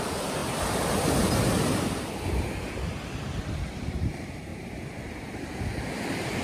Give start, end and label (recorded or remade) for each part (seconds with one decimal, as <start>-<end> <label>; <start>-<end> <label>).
0.0-0.4 remade; 0.4-3.4 recorded; 3.4-4.5 remade; 4.5-5.7 recorded; 5.7-6.4 remade